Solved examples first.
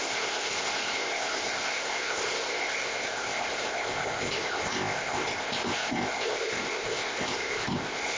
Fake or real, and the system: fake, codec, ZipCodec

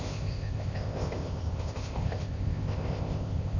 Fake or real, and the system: fake, codec, ZipCodec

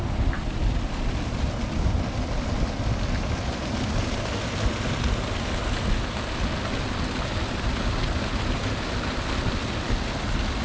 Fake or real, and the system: real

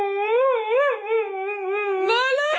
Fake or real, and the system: real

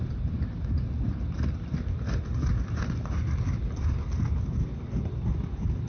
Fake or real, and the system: real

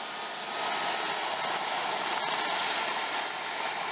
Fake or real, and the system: real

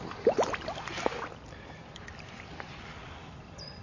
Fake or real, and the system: real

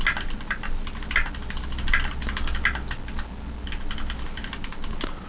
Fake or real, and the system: real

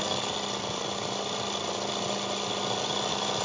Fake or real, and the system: real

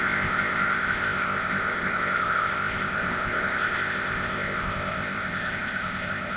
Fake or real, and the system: fake, codec, ZipCodec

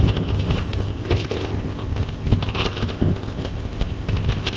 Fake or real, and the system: fake, codec, ZipCodec